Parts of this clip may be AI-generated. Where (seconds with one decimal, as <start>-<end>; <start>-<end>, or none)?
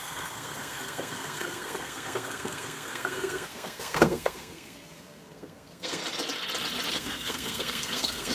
0.0-6.0; 6.9-8.3